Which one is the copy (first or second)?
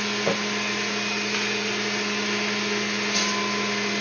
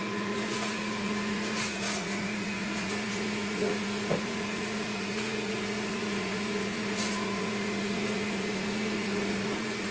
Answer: second